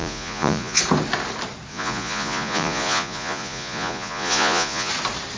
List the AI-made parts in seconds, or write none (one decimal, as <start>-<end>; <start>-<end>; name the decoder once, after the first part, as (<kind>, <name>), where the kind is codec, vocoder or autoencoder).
0.0-0.8 (vocoder, Vocos); 1.7-4.9

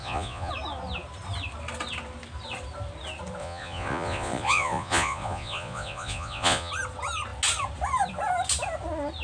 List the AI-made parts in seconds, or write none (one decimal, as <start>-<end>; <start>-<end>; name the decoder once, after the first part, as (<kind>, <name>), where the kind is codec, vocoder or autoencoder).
0.0-0.5 (vocoder, Vocos); 3.4-6.7

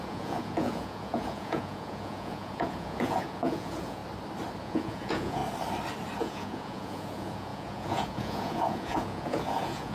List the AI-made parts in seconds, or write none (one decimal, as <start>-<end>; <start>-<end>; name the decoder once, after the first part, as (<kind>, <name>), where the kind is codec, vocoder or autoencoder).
0.0-4.0 (vocoder, Vocos); 4.6-5.4; 6.2-9.9

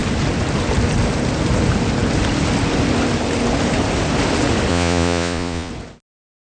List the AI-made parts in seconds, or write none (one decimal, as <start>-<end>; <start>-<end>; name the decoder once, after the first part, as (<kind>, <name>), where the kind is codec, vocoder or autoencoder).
4.7-5.7 (vocoder, Vocos)

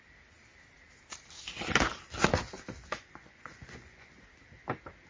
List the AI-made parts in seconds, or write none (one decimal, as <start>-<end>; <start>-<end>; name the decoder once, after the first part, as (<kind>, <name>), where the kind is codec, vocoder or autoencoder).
3.0-4.1 (vocoder, Vocos)